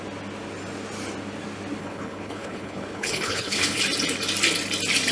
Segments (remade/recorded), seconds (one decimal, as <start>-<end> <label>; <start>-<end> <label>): 0.0-1.8 recorded; 1.8-3.8 remade; 3.8-5.1 recorded